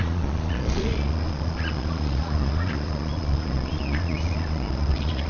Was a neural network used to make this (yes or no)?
yes